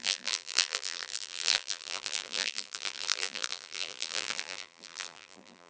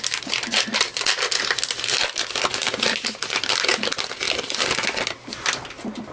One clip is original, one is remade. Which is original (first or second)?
second